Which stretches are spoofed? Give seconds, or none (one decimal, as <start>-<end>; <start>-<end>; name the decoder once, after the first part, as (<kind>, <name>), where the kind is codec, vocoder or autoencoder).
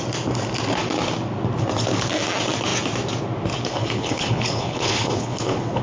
3.7-5.8 (codec, HILCodec)